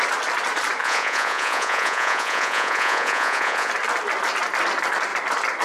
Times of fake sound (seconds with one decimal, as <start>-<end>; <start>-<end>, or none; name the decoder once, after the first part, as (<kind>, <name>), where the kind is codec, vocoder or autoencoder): 0.8-3.7 (vocoder, Vocos)